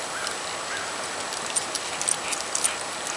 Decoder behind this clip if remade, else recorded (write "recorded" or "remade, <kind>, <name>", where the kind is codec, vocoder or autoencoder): recorded